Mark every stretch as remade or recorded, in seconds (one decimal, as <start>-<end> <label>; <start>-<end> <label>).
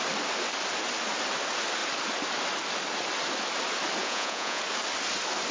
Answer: 0.0-4.0 recorded; 4.0-4.6 remade; 4.6-5.5 recorded